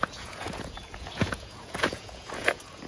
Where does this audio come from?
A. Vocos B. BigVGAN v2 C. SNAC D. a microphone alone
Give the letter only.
A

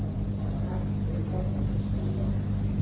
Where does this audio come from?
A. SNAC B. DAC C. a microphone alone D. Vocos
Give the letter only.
C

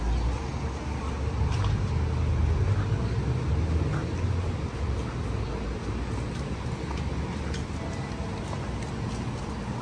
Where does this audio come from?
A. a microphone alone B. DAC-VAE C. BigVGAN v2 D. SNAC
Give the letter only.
A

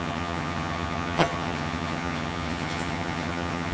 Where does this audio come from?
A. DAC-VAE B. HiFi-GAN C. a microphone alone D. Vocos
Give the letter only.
B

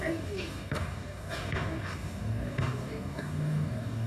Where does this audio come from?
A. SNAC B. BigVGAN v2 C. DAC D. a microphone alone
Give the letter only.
C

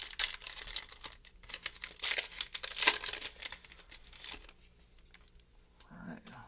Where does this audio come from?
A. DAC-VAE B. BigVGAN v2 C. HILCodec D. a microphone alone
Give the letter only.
D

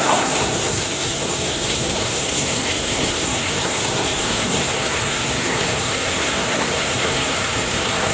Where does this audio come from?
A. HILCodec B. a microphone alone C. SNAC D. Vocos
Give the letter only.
C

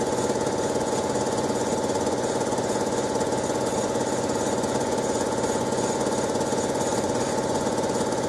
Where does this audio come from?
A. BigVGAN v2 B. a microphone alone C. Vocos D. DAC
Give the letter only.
C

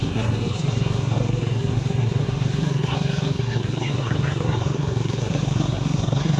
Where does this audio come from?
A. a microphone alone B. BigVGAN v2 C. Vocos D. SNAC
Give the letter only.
D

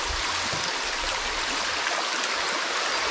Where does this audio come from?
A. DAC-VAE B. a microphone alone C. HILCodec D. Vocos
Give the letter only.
B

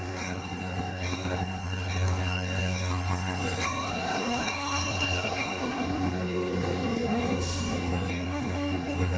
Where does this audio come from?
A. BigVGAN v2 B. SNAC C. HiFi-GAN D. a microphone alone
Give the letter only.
B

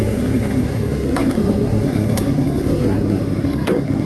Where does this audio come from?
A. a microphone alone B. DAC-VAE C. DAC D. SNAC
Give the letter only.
D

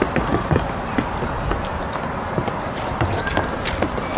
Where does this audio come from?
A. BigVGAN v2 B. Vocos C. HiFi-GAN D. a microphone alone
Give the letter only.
D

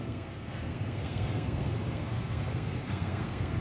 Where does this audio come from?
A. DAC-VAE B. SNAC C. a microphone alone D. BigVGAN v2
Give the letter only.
B